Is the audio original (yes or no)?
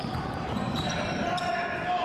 no